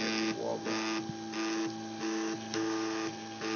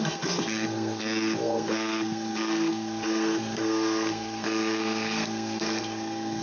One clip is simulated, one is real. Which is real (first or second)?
first